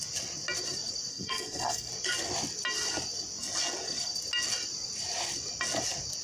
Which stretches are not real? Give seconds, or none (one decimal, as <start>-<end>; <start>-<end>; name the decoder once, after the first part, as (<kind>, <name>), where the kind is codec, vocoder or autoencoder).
1.1-1.9 (codec, SNAC)